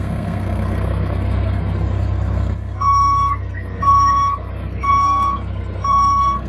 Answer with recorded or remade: remade